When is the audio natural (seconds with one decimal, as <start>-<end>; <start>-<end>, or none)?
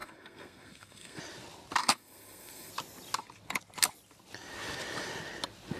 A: 1.2-1.8; 2.7-5.8